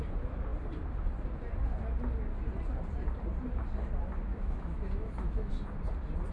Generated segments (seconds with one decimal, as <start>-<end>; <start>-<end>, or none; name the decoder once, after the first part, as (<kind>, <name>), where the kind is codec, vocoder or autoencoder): 4.3-5.5 (autoencoder, DAC-VAE)